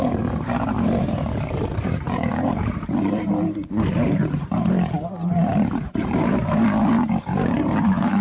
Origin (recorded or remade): remade